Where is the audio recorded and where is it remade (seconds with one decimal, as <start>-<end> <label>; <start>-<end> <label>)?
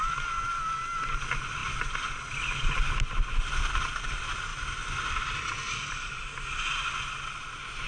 0.0-7.9 recorded